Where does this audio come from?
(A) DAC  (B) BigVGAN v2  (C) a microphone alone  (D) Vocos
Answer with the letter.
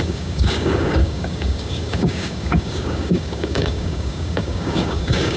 A